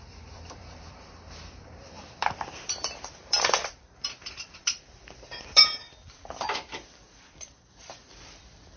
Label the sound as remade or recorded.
remade